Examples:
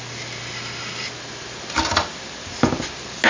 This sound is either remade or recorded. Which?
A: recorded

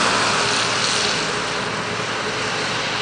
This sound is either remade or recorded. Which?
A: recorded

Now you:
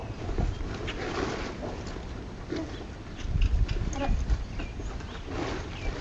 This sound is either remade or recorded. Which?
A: recorded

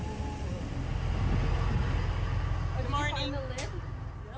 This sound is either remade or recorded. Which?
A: recorded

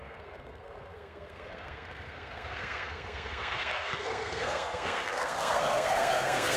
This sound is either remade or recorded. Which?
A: remade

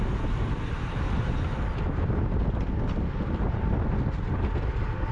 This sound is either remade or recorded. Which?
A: recorded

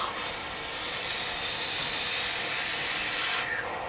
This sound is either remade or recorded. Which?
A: recorded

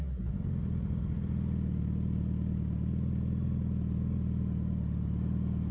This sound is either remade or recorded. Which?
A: recorded